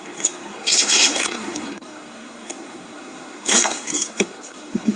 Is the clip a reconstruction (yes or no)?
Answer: yes